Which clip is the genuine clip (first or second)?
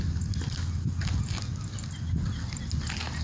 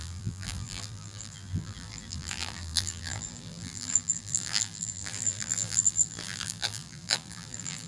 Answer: first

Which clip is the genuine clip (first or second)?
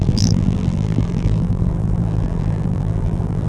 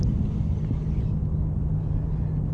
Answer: second